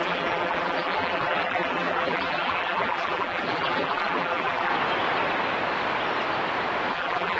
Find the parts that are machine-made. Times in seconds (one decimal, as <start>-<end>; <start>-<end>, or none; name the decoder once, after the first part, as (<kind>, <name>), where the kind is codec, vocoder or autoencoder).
0.0-4.7 (vocoder, BigVGAN v2); 6.9-7.4